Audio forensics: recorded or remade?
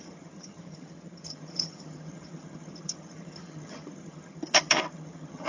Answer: remade